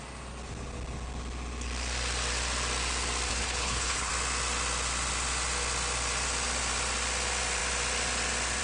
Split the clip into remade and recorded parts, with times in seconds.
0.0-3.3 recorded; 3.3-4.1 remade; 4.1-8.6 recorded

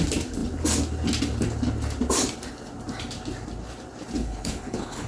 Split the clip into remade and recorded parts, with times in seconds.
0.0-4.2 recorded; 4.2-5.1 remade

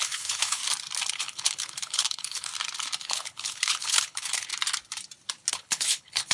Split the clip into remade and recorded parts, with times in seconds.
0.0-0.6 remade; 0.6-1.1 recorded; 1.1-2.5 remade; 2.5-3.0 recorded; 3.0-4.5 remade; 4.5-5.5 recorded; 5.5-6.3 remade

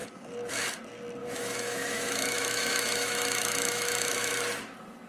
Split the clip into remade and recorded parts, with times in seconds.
0.0-1.2 recorded; 1.2-4.3 remade; 4.3-5.1 recorded

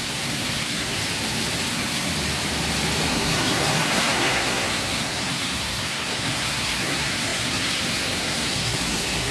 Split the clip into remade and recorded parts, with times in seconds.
0.0-1.0 remade; 1.0-1.7 recorded; 1.7-2.1 remade; 2.1-3.1 recorded; 3.1-9.3 remade

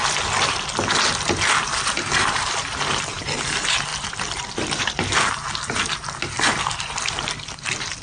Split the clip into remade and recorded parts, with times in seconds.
0.0-8.0 recorded

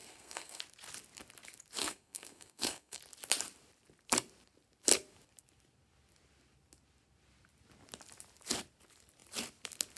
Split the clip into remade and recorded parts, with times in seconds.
0.0-0.6 remade; 0.6-1.8 recorded; 1.8-3.0 remade; 3.0-10.0 recorded